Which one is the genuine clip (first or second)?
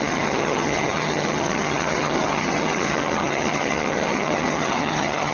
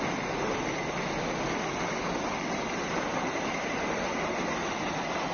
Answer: second